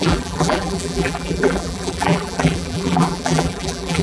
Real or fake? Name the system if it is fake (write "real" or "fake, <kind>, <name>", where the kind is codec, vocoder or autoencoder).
fake, vocoder, BigVGAN v2